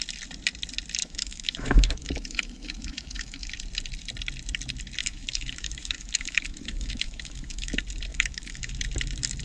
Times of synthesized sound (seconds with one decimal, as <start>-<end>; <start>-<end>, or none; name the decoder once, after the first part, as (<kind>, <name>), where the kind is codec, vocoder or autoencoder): 1.0-3.5 (autoencoder, DAC-VAE); 5.0-7.7; 8.1-8.7